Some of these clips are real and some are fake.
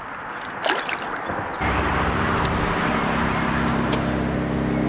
real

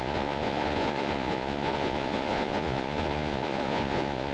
fake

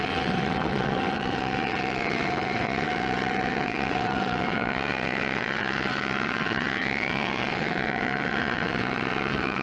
fake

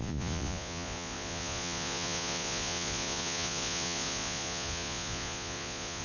fake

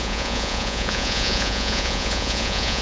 fake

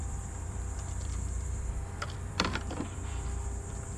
fake